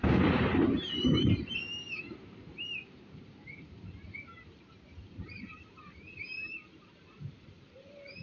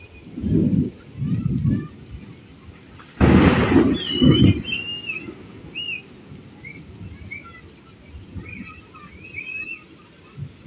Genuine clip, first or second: second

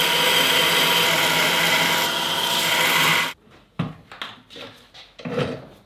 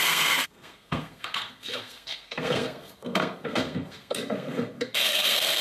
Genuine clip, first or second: first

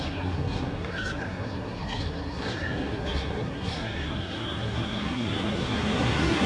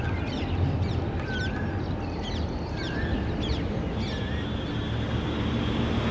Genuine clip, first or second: second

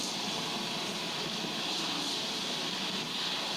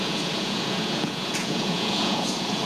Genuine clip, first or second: first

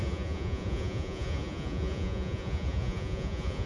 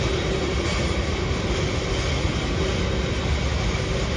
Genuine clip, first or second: second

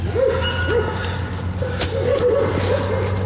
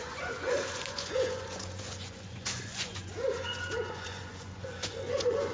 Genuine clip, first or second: first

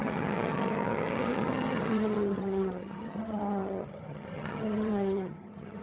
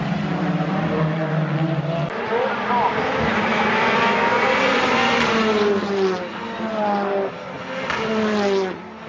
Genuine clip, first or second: second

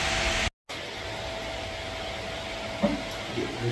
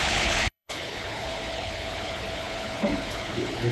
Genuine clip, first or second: first